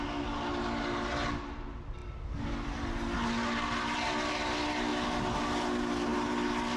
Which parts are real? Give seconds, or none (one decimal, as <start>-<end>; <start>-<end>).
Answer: 0.0-6.8